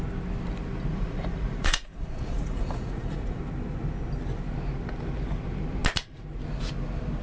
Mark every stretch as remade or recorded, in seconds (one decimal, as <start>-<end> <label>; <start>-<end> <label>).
0.0-0.9 recorded; 0.9-3.4 remade; 3.4-7.2 recorded